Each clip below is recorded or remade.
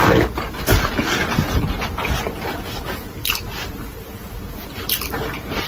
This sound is recorded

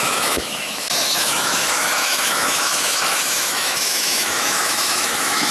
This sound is remade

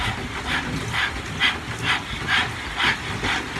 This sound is recorded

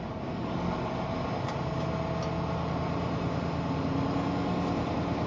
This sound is recorded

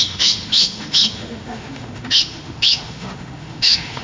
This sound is remade